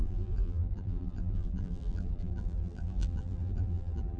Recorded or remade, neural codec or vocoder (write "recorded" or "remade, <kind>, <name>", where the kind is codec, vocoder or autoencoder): remade, vocoder, BigVGAN v2